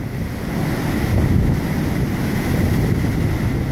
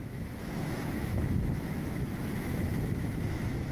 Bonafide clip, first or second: first